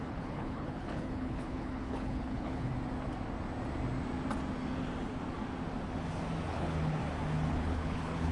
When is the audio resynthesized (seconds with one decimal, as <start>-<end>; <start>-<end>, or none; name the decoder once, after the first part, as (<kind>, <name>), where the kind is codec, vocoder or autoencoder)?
0.0-2.7 (codec, HILCodec); 6.5-7.0; 7.5-8.3